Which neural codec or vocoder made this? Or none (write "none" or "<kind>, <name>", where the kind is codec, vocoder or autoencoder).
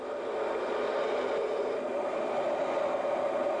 none